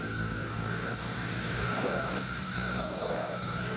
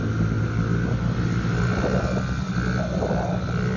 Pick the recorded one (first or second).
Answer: second